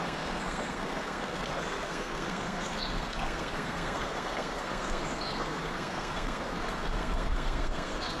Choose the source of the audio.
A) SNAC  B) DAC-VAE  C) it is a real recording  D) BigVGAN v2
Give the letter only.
A